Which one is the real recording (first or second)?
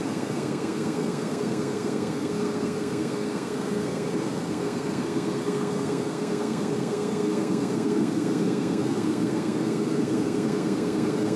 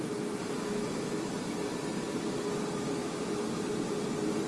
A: second